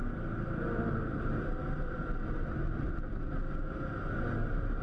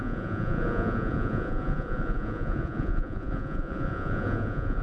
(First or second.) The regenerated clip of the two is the second